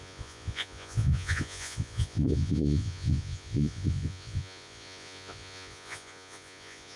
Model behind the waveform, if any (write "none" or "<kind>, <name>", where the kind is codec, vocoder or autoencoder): vocoder, Vocos